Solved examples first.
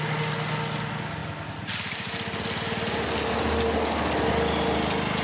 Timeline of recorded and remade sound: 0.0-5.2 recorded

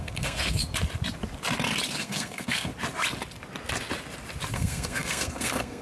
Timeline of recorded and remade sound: 0.0-0.6 remade; 0.6-1.9 recorded; 1.9-2.7 remade; 2.7-4.5 recorded; 4.5-5.8 remade

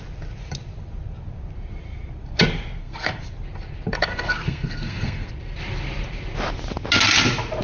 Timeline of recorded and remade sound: 0.0-2.8 recorded; 2.8-3.3 remade; 3.3-4.1 recorded; 4.1-5.3 remade; 5.3-7.6 recorded

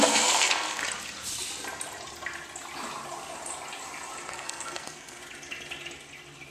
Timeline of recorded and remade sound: 0.0-0.8 remade; 0.8-4.3 recorded; 4.3-5.2 remade; 5.2-6.5 recorded

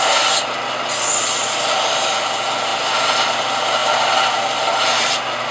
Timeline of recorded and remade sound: 0.0-5.5 recorded

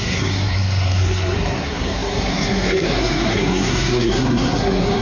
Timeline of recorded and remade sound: 0.0-5.0 remade